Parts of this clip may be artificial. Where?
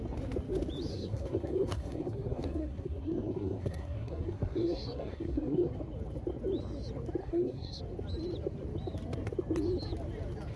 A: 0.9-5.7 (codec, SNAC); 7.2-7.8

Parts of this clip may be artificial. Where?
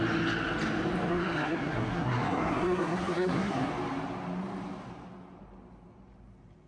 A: 1.1-3.7 (codec, SNAC)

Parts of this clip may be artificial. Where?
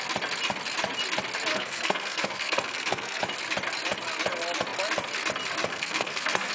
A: 1.5-3.2 (codec, SNAC); 5.7-6.5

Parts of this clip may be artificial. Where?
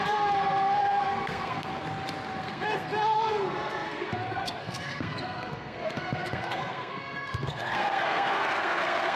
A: 0.0-1.7 (codec, SNAC); 2.4-9.2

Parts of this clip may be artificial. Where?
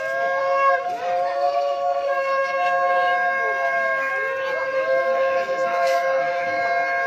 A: 0.4-0.9 (codec, SNAC); 1.3-4.1; 5.0-6.6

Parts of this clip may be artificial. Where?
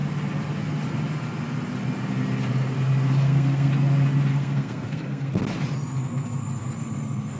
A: 3.2-3.7 (codec, SNAC); 4.3-5.3